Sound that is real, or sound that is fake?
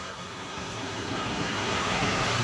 fake